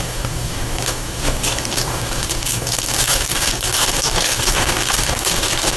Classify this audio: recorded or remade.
remade